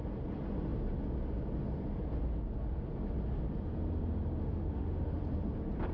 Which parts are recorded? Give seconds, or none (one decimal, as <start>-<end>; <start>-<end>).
0.0-4.4; 5.2-5.9